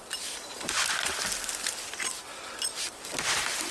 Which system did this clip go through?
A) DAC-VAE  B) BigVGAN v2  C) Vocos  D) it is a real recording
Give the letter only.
B